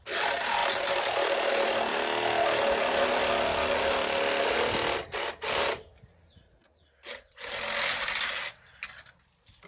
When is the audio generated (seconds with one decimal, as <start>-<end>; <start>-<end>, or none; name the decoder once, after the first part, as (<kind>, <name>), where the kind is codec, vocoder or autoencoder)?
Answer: 0.6-1.5 (vocoder, BigVGAN v2)